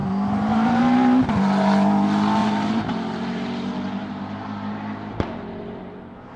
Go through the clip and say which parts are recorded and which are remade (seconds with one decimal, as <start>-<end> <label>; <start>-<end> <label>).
0.0-0.8 remade; 0.8-2.4 recorded; 2.4-5.9 remade; 5.9-6.4 recorded